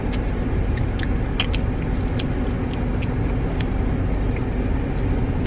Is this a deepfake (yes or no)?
no